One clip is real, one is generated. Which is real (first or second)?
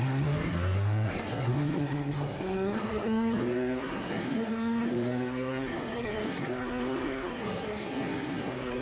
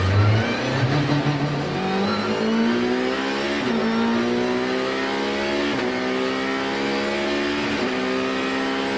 second